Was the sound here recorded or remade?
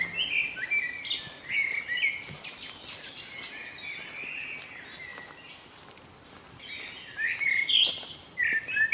recorded